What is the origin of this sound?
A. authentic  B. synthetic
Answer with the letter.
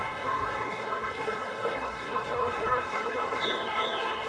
B